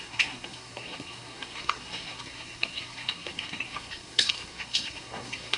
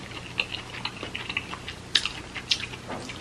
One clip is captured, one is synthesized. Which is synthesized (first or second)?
first